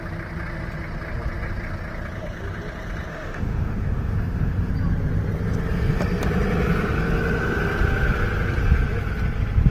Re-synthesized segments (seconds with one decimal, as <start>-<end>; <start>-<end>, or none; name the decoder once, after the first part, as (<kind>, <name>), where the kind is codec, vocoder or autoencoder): 3.1-4.7 (autoencoder, DAC-VAE)